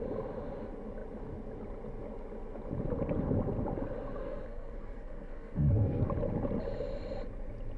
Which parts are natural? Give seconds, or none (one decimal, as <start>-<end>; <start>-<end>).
0.0-4.2; 6.1-7.8